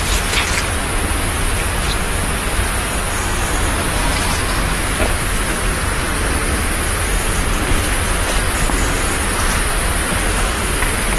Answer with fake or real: real